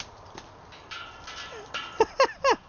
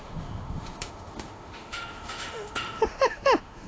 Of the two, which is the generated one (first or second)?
second